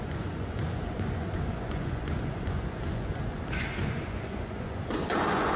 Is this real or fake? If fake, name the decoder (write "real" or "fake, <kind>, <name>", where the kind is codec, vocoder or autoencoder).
fake, vocoder, Vocos